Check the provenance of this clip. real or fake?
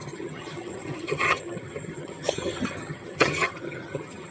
fake